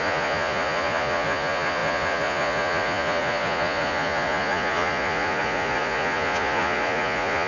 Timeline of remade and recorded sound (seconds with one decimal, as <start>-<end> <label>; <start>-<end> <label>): 0.0-7.5 remade